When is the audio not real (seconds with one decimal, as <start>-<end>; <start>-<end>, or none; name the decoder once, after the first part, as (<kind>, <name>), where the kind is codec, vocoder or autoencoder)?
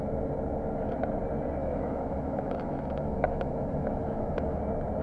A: 1.6-4.6 (autoencoder, DAC-VAE)